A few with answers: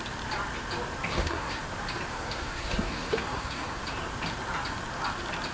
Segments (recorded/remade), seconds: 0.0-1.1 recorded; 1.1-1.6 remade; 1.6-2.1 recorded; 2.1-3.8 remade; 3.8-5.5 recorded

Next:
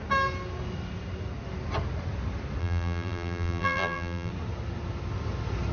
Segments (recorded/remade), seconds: 0.0-2.6 recorded; 2.6-4.3 remade; 4.3-5.7 recorded

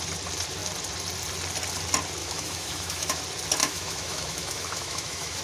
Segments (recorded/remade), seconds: 0.0-2.2 recorded; 2.2-3.2 remade; 3.2-3.6 recorded; 3.6-5.4 remade

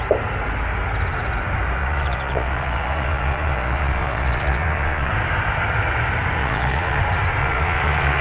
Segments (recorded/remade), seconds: 0.0-1.8 recorded; 1.8-5.1 remade; 5.1-6.4 recorded; 6.4-7.0 remade; 7.0-7.4 recorded; 7.4-8.2 remade